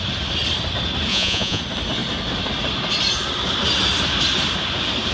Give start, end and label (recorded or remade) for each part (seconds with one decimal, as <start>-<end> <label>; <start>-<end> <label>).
0.0-1.1 recorded; 1.1-1.6 remade; 1.6-5.1 recorded